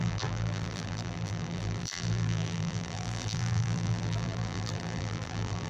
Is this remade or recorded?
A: remade